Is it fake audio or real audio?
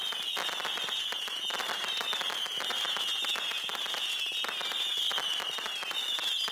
real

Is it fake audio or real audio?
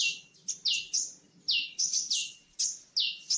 real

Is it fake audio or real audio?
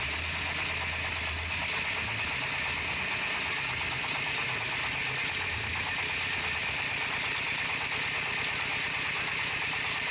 real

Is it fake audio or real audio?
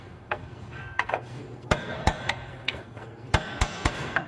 fake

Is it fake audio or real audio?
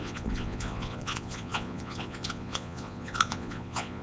fake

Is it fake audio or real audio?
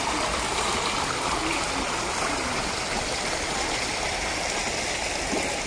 real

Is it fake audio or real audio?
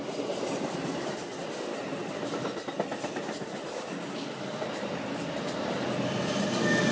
real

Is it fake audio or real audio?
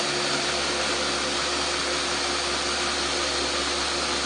real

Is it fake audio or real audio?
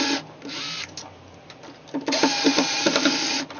real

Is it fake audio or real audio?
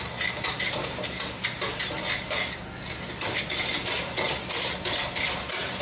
real